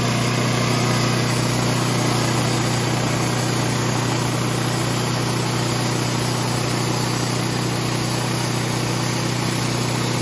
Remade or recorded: recorded